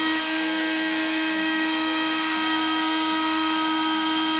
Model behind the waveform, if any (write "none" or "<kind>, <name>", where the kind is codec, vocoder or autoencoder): codec, SNAC